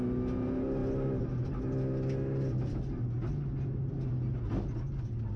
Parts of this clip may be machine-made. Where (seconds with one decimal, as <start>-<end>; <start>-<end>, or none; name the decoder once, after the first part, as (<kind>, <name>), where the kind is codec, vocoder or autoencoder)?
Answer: none